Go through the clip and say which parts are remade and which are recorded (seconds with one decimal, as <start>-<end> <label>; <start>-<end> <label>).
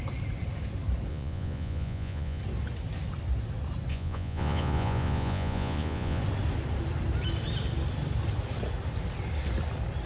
0.0-1.1 recorded; 1.1-2.4 remade; 2.4-3.9 recorded; 3.9-6.2 remade; 6.2-10.1 recorded